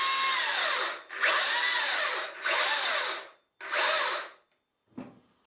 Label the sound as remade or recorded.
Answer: recorded